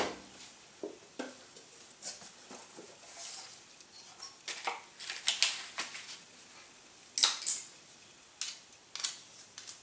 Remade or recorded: recorded